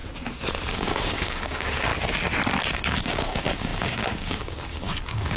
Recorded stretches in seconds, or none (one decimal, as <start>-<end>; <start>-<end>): 0.0-0.7; 1.9-2.6